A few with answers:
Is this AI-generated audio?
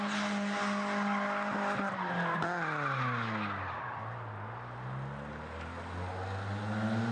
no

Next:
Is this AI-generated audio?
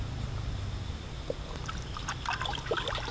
no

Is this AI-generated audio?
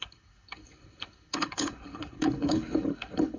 yes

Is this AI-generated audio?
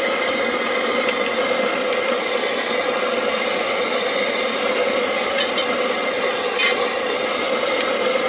no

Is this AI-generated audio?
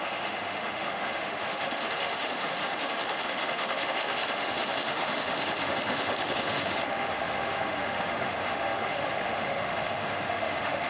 yes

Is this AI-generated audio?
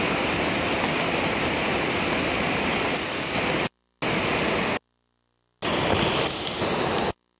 no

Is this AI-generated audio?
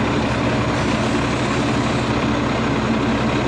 no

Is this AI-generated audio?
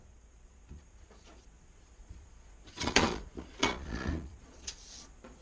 yes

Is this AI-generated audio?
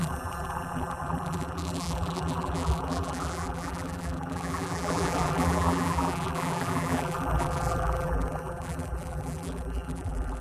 yes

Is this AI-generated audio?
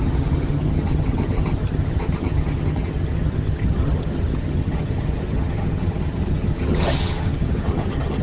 yes